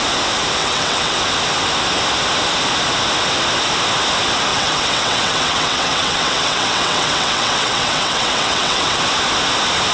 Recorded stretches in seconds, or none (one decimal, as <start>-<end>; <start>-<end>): 0.0-0.6; 1.2-4.5; 9.0-9.9